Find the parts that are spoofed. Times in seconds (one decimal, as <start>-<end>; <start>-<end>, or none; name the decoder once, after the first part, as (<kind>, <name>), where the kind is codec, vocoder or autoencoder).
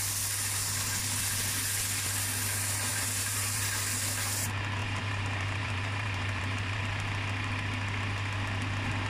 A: 2.9-3.6 (vocoder, BigVGAN v2); 4.8-6.8